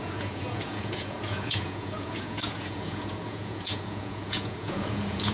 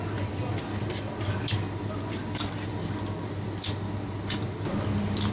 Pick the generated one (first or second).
first